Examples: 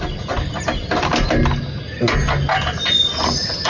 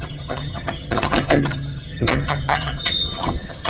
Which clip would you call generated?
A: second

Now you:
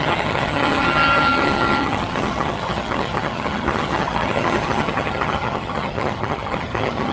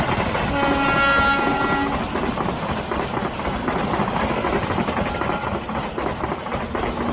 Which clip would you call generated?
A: first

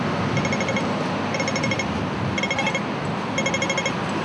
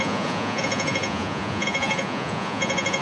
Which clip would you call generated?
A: second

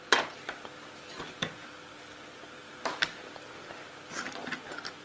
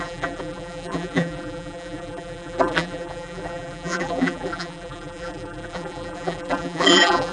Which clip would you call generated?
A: second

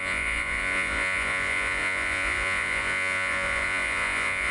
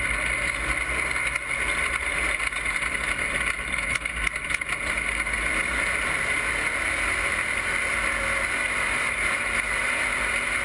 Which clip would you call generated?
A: first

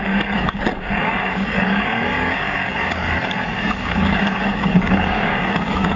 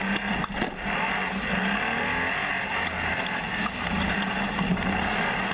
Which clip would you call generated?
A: first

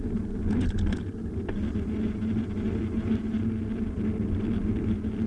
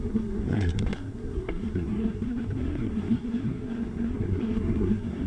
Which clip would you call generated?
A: second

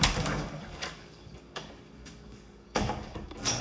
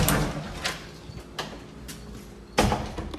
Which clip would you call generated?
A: first